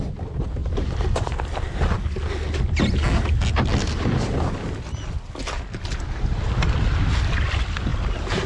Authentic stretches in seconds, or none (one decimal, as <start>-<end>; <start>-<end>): 0.0-0.6; 1.8-7.9